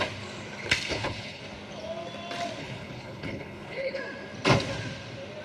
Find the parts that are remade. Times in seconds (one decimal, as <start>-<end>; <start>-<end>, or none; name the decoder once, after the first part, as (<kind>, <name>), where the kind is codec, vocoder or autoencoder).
0.9-1.4 (codec, HILCodec); 2.6-4.0